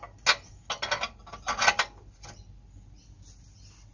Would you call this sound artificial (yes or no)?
no